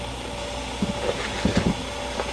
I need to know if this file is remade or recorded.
recorded